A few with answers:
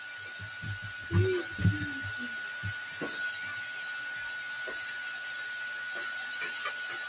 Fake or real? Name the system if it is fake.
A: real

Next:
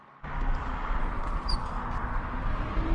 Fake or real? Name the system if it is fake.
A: real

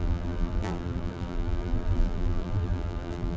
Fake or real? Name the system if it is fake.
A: fake, vocoder, BigVGAN v2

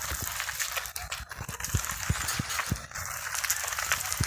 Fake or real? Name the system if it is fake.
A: real